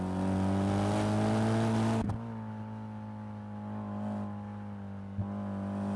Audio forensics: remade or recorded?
recorded